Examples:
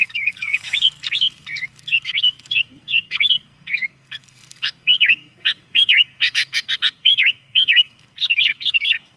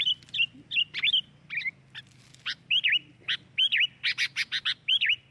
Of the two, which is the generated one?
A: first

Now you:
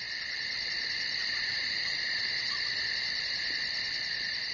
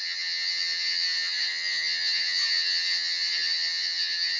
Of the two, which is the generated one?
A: second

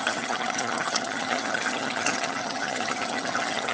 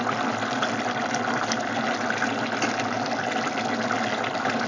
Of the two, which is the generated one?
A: first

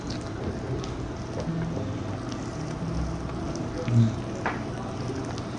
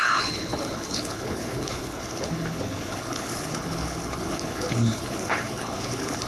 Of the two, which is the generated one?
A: second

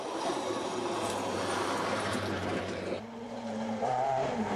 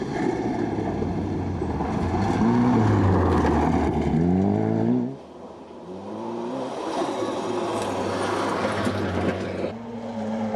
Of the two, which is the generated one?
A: first